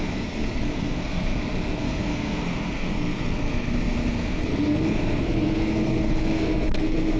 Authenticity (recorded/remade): remade